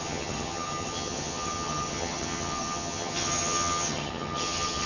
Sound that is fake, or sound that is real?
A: fake